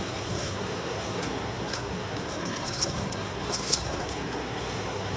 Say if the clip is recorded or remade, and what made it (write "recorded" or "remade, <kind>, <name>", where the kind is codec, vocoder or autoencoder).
remade, codec, SNAC